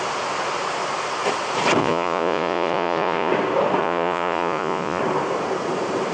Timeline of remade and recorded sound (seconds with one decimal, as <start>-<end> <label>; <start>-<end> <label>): 0.0-1.8 recorded; 1.8-3.3 remade; 3.3-3.8 recorded; 3.8-5.0 remade; 5.0-6.1 recorded